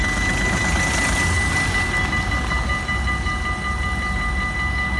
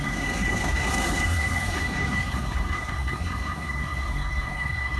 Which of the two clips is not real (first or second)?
second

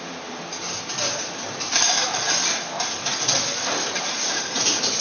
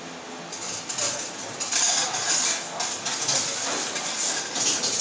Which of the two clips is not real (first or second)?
first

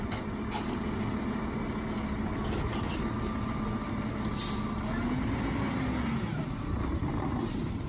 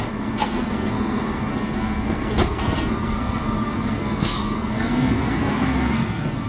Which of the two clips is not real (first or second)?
second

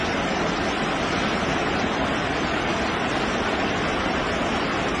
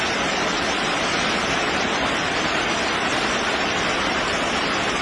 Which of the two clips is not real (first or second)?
second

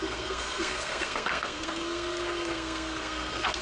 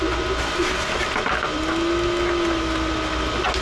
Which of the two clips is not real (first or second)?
first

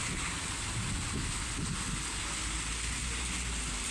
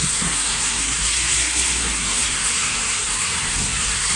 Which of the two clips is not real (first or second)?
second